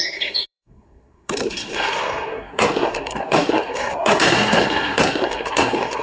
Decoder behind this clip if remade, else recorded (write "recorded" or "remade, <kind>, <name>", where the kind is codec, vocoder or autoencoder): remade, codec, SNAC